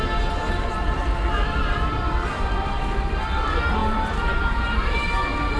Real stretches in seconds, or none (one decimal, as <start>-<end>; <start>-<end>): 0.0-3.8; 5.1-5.6